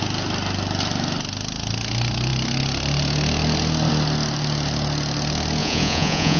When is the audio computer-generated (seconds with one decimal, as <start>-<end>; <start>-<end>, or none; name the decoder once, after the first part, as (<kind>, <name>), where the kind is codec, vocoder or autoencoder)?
5.6-6.4 (vocoder, Vocos)